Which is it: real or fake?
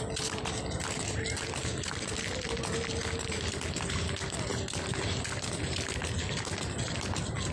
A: real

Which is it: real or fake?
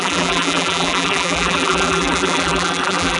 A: fake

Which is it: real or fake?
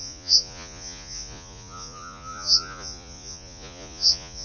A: fake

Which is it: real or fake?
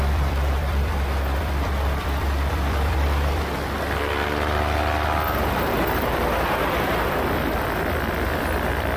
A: fake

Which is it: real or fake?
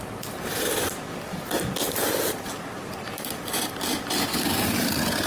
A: fake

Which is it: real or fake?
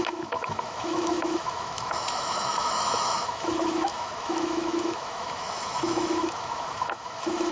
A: fake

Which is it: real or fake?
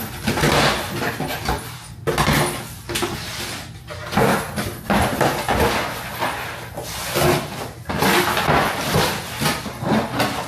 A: real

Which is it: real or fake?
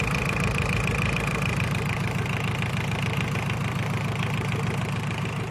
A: real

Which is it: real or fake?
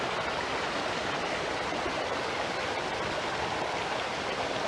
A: real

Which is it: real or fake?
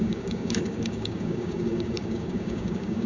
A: fake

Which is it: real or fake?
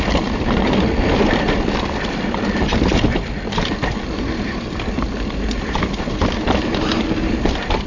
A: fake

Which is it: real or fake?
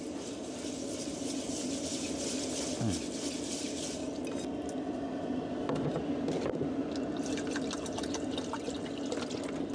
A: real